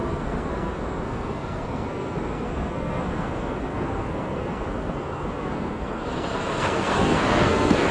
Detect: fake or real fake